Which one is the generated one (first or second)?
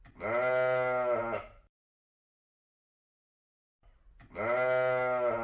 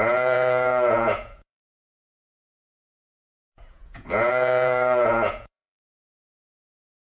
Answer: second